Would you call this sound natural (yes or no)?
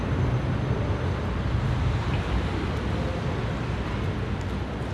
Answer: yes